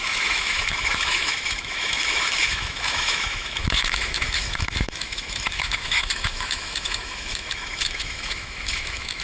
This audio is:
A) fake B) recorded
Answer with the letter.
A